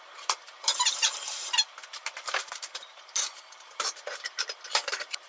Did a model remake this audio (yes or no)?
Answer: yes